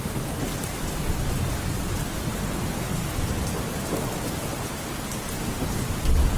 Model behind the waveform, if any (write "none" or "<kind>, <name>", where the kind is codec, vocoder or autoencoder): none